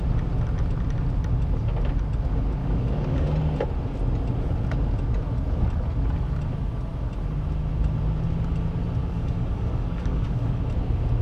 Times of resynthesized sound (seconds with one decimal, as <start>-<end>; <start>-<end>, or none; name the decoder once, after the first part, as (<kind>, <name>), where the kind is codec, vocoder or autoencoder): 2.6-3.3 (codec, DAC); 9.0-10.6